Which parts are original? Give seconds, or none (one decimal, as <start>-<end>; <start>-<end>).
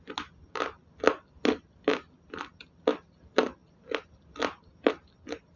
0.0-5.6